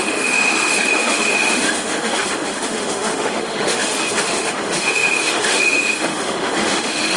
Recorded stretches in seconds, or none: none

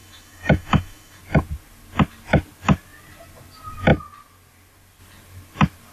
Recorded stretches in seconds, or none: 1.2-5.9

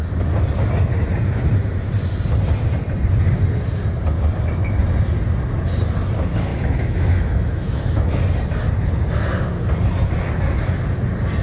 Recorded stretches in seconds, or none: 0.0-6.5; 8.2-11.4

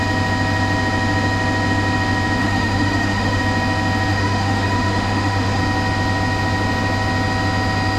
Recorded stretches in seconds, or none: 0.0-2.4; 3.4-4.1; 5.6-8.0

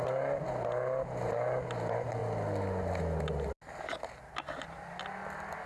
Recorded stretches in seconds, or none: 0.0-5.7

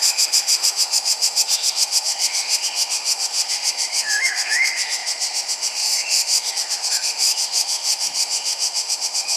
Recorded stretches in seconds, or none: none

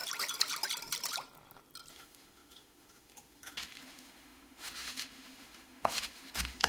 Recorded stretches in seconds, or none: 0.0-1.9